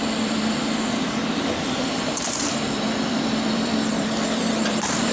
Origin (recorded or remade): remade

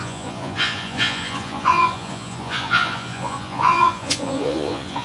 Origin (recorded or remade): remade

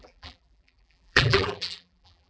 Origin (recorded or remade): remade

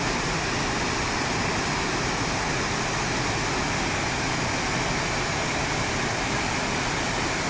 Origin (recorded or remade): recorded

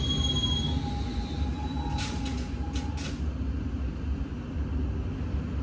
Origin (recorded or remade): recorded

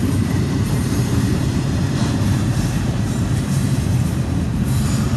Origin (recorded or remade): remade